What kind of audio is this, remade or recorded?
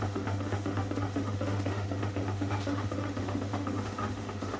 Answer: remade